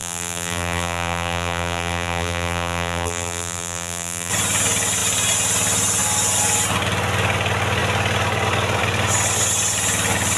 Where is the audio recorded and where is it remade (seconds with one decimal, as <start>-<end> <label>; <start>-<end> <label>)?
0.0-4.3 remade; 4.3-10.4 recorded